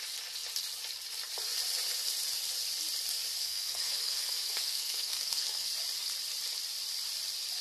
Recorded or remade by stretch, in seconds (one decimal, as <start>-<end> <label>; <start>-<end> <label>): 0.0-3.4 recorded; 3.4-5.7 remade; 5.7-7.6 recorded

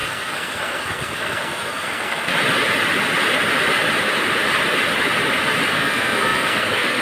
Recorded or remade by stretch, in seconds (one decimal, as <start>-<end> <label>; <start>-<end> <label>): 0.0-2.3 remade; 2.3-5.7 recorded; 5.7-7.0 remade

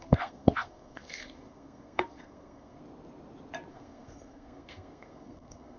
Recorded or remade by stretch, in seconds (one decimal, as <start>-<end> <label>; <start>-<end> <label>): 0.0-2.8 remade; 2.8-3.7 recorded; 3.7-5.8 remade

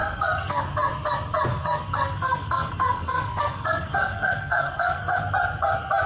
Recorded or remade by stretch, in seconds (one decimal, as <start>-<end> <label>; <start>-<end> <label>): 0.0-0.6 remade; 0.6-1.5 recorded; 1.5-5.2 remade; 5.2-6.1 recorded

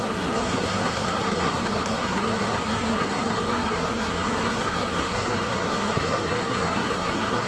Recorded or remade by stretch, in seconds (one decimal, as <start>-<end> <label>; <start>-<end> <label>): 0.0-7.5 remade

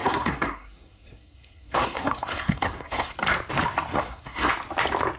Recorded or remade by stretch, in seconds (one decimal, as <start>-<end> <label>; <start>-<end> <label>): 0.0-3.1 remade; 3.1-3.9 recorded; 3.9-4.5 remade; 4.5-5.2 recorded

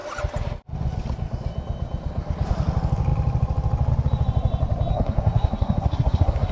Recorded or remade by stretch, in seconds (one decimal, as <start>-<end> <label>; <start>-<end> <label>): 0.0-4.9 recorded; 4.9-6.5 remade

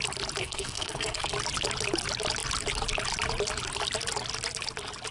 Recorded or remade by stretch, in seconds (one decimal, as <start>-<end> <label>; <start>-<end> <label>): 0.0-0.4 recorded; 0.4-1.3 remade; 1.3-5.1 recorded